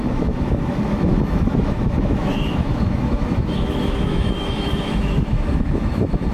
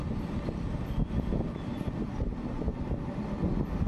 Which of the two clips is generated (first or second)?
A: first